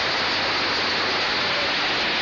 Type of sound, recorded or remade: recorded